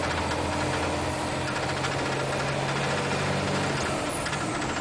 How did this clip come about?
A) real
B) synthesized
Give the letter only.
A